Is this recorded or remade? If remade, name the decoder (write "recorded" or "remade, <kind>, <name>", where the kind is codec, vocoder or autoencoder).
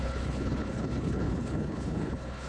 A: remade, codec, HILCodec